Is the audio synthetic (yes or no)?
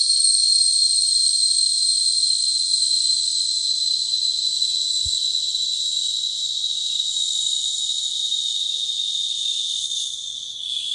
no